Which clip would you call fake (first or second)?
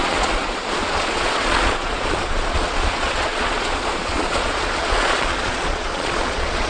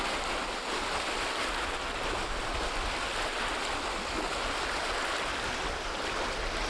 first